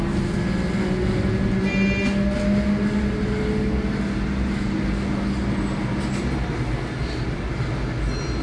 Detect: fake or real real